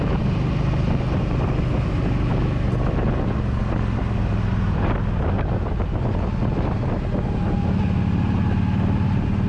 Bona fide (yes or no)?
yes